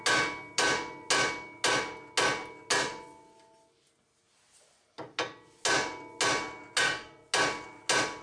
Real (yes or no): yes